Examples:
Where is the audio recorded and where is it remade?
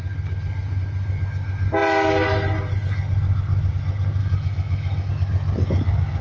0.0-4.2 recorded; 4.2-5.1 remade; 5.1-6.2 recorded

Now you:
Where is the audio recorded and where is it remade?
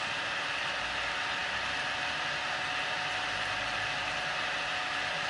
0.0-5.3 recorded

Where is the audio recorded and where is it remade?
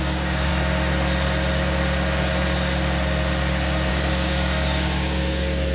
0.0-0.5 remade; 0.5-3.9 recorded; 3.9-5.7 remade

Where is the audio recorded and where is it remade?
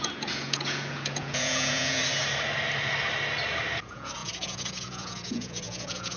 0.0-2.0 remade; 2.0-3.8 recorded; 3.8-6.2 remade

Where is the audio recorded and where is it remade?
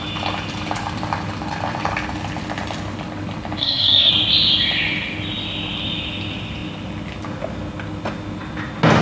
0.0-3.6 recorded; 3.6-4.1 remade; 4.1-9.0 recorded